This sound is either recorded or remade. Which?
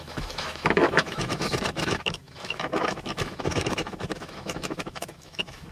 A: remade